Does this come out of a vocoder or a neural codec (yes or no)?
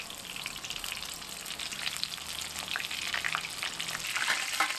no